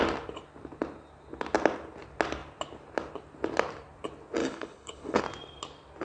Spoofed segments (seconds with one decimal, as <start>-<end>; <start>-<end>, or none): 4.4-5.2